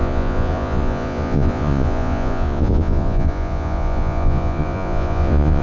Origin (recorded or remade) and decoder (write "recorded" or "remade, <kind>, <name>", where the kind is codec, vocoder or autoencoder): remade, vocoder, Vocos